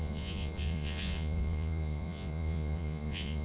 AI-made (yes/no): yes